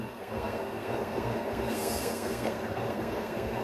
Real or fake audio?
fake